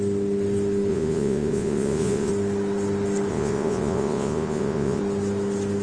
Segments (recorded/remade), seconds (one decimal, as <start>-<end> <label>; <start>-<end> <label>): 0.0-0.9 recorded; 0.9-2.3 remade; 2.3-3.3 recorded; 3.3-5.0 remade; 5.0-5.8 recorded